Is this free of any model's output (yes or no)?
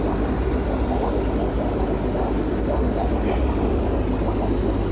yes